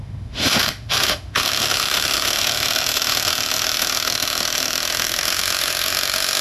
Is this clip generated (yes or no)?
yes